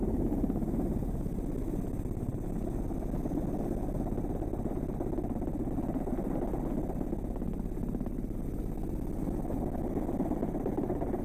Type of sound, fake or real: real